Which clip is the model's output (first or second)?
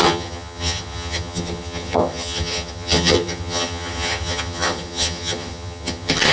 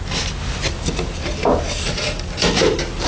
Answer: first